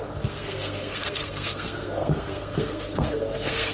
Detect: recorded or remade remade